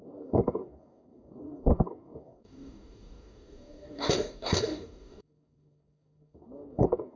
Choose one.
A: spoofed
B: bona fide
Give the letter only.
A